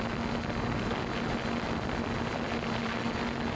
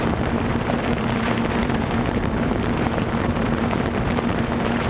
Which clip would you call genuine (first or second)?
first